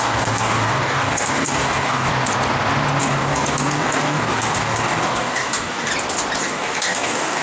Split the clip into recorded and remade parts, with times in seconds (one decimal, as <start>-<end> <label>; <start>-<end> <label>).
0.0-2.1 remade; 2.1-3.0 recorded; 3.0-5.9 remade; 5.9-6.4 recorded; 6.4-7.4 remade